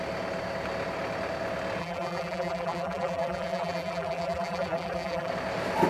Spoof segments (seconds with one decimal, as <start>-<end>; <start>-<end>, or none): 1.8-5.3